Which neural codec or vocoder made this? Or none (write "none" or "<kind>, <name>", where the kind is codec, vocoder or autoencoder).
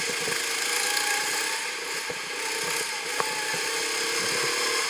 none